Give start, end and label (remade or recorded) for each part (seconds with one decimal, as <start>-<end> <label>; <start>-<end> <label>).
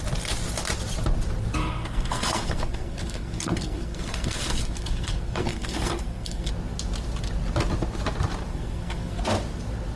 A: 0.0-1.6 recorded; 1.6-6.5 remade; 6.5-8.5 recorded; 8.5-9.2 remade; 9.2-10.0 recorded